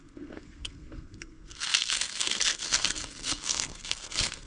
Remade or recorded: remade